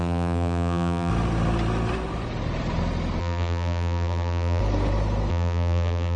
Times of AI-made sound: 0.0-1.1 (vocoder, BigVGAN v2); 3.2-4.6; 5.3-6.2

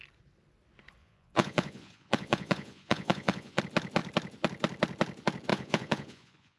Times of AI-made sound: 1.0-3.6 (vocoder, Vocos); 5.5-6.6

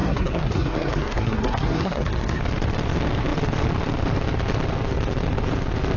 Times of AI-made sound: 0.0-2.4 (codec, SNAC)

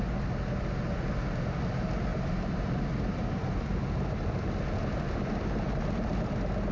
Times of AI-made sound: 2.1-4.3 (vocoder, BigVGAN v2)

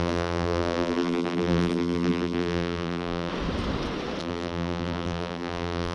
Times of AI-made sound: 0.0-3.3 (vocoder, BigVGAN v2); 4.2-5.9

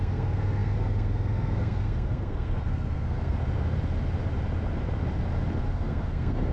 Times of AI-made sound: 0.0-3.4 (codec, SNAC); 5.6-6.5

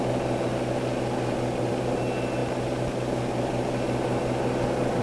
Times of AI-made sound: none